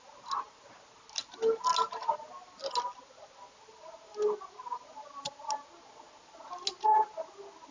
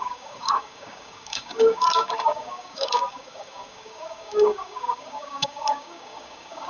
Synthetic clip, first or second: second